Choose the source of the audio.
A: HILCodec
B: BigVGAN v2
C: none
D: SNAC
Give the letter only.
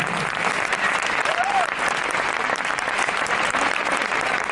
B